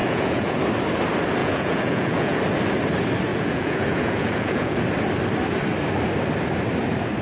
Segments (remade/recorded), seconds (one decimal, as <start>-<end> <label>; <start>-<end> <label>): 0.0-0.6 remade; 0.6-1.4 recorded; 1.4-2.4 remade; 2.4-3.3 recorded; 3.3-4.8 remade; 4.8-7.2 recorded